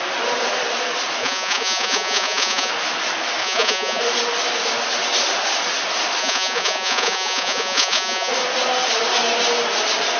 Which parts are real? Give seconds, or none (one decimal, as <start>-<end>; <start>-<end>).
0.0-1.2; 2.7-3.4; 4.0-6.2; 8.3-10.2